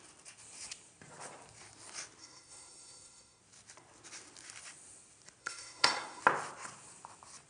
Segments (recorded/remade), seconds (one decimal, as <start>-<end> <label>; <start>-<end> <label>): 0.0-2.2 recorded; 2.2-3.4 remade; 3.4-5.4 recorded; 5.4-6.2 remade; 6.2-7.5 recorded